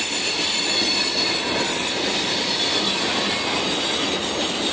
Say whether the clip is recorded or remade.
recorded